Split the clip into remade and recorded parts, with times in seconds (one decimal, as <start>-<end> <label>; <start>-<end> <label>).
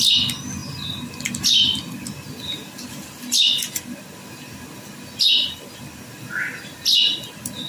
0.0-7.7 recorded